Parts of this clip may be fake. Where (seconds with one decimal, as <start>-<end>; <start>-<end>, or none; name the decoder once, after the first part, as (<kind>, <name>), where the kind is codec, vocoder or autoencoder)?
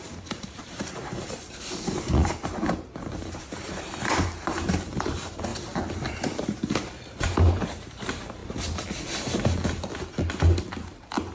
0.0-5.5 (vocoder, BigVGAN v2); 6.1-8.4; 10.6-11.3